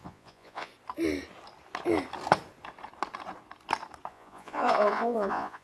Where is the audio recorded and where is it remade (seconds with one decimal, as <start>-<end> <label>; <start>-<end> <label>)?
0.0-0.7 remade; 0.7-4.1 recorded; 4.1-5.6 remade